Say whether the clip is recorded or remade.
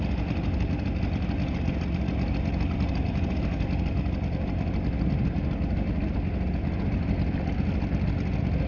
recorded